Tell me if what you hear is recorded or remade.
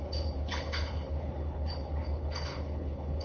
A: remade